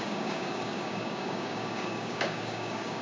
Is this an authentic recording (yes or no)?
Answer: no